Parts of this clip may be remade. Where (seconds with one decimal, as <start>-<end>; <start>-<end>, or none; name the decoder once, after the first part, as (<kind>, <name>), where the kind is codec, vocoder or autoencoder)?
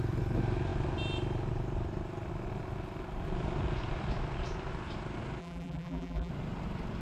5.4-6.3 (vocoder, BigVGAN v2)